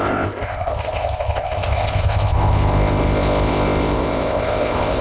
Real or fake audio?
fake